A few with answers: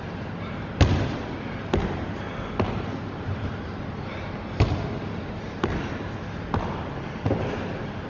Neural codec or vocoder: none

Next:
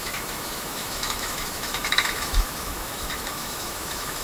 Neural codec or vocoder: autoencoder, DAC-VAE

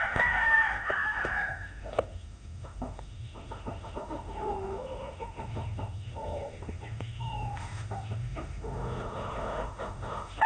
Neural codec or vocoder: autoencoder, DAC-VAE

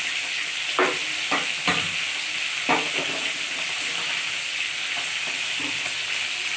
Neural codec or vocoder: none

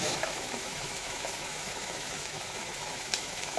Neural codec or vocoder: autoencoder, DAC-VAE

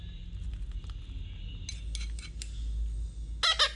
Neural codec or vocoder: none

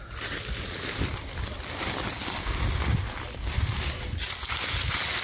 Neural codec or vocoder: none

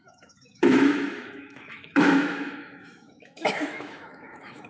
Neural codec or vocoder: autoencoder, DAC-VAE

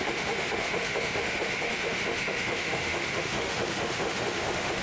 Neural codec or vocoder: autoencoder, DAC-VAE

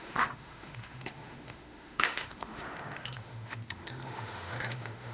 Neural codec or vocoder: autoencoder, DAC-VAE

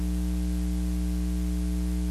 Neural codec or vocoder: none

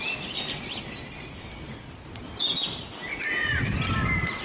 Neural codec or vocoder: none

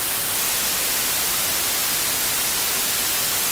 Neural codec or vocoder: none